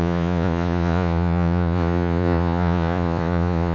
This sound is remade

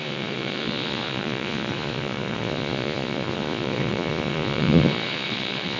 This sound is remade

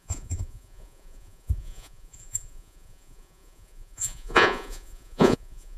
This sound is remade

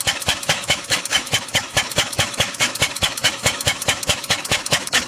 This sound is remade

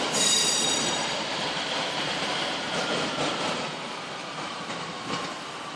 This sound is remade